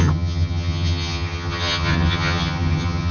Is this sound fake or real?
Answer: fake